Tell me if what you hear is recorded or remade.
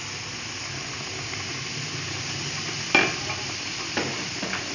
recorded